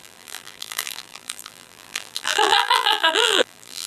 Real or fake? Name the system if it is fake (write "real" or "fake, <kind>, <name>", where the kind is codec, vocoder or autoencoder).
fake, vocoder, BigVGAN v2